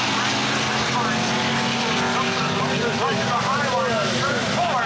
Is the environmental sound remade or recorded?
recorded